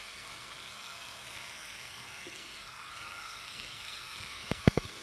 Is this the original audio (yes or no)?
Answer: no